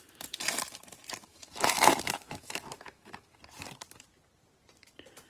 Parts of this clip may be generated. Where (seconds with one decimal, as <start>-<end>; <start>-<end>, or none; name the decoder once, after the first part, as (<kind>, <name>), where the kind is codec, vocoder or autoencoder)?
1.3-3.4 (autoencoder, DAC-VAE)